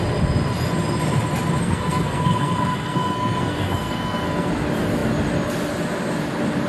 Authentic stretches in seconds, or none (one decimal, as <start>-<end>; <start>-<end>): 0.0-1.6; 4.5-6.7